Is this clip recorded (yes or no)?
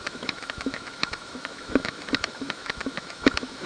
no